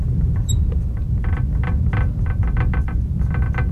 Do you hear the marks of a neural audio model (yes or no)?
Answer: no